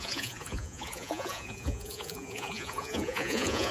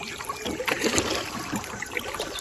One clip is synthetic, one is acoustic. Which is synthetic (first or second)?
first